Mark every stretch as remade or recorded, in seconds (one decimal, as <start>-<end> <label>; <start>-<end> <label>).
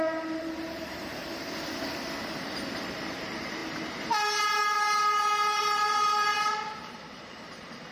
0.0-1.2 remade; 1.2-2.2 recorded; 2.2-7.9 remade